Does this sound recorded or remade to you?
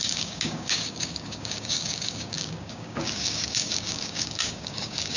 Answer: remade